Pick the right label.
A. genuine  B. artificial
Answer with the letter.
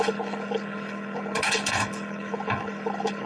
B